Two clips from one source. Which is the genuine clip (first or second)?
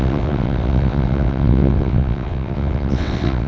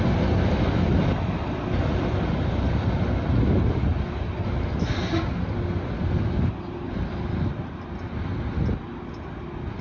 second